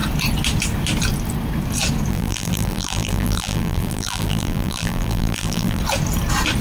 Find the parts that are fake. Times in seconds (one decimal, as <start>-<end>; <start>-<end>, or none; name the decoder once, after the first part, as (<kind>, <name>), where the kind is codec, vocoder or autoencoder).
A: 2.1-5.8 (vocoder, BigVGAN v2)